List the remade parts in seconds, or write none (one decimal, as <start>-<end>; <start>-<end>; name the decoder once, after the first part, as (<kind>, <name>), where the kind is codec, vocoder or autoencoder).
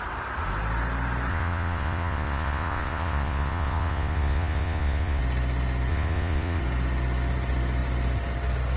1.3-5.2 (vocoder, Vocos); 5.9-6.6